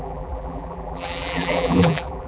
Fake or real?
fake